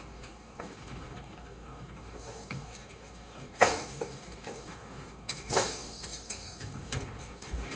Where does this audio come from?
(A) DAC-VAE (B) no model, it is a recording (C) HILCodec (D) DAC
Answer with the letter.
D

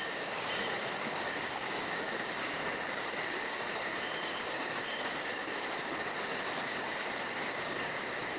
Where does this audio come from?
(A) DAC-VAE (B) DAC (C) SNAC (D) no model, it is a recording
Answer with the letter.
B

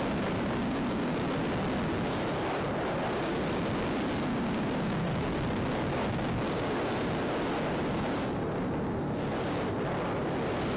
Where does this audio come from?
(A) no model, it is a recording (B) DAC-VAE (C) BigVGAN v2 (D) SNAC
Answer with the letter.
A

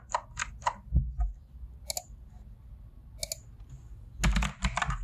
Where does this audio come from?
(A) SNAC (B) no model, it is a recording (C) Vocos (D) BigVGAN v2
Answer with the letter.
B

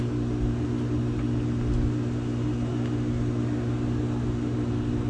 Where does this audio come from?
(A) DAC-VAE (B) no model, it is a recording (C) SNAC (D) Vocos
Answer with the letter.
B